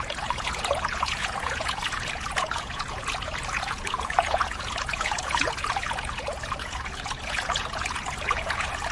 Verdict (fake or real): fake